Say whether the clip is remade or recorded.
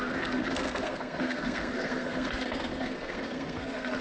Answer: remade